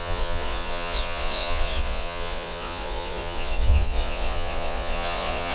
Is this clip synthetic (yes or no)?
yes